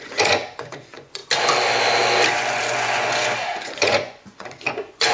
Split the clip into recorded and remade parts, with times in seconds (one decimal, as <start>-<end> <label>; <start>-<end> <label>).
0.0-1.2 remade; 1.2-2.3 recorded; 2.3-5.1 remade